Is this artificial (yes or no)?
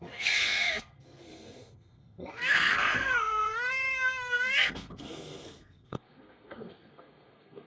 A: yes